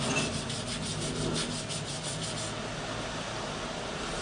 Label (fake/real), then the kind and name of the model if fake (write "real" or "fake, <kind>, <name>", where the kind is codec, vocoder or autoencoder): real